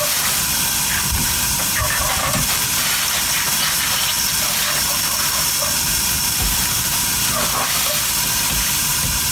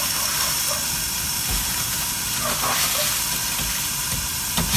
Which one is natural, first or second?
second